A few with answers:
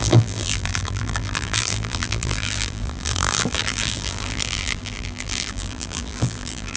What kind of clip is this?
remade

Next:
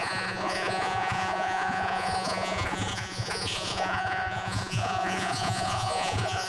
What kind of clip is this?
remade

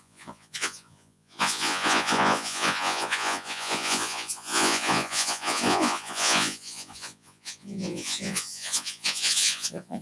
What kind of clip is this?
remade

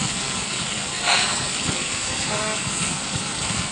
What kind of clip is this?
remade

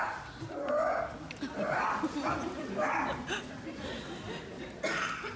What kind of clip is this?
recorded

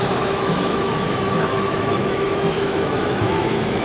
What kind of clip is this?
remade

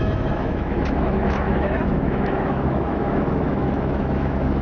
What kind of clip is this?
remade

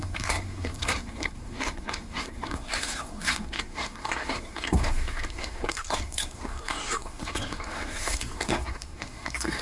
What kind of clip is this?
remade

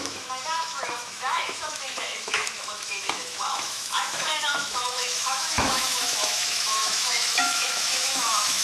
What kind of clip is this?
remade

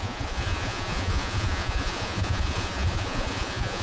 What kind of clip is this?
remade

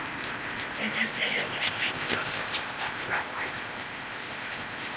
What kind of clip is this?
remade